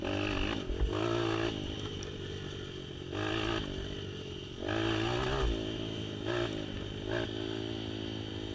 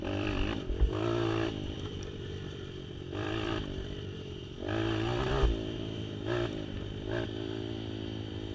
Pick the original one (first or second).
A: first